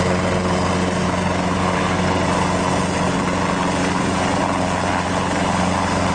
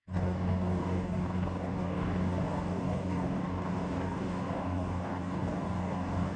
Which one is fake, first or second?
second